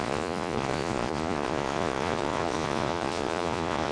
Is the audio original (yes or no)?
no